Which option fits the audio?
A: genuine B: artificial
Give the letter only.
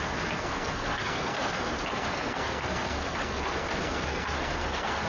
B